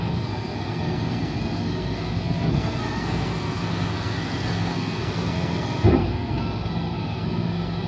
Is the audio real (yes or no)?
no